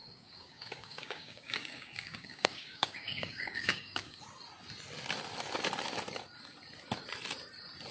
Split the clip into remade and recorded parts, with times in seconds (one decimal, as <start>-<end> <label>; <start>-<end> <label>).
0.0-4.2 remade; 4.2-7.9 recorded